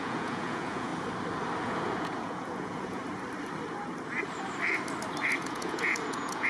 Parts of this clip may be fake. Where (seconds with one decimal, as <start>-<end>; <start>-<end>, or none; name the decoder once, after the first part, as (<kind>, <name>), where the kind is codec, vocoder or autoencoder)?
0.0-0.9 (vocoder, Vocos); 1.6-3.0; 5.4-6.5